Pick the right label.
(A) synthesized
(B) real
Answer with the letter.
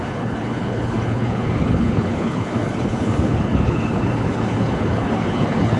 A